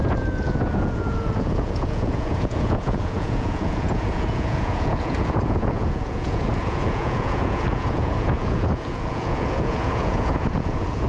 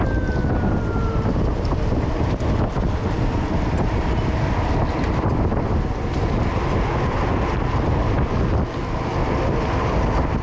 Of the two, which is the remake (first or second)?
first